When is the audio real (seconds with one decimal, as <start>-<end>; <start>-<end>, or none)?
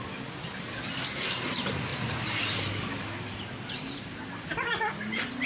0.0-5.5